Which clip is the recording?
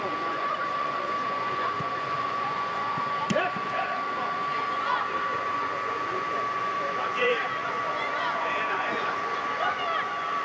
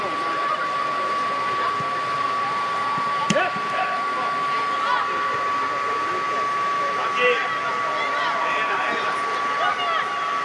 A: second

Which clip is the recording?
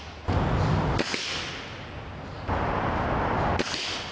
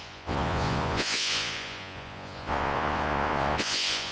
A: first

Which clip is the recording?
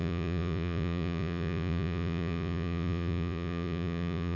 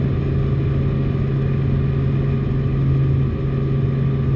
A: second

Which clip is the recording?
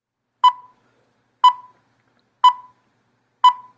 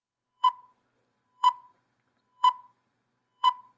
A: first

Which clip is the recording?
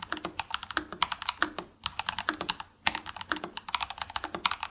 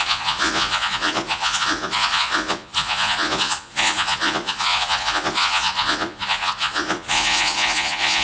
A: first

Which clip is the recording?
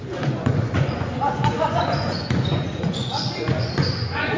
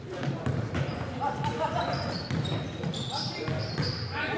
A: second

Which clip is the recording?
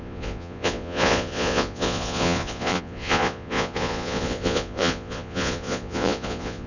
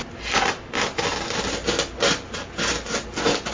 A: second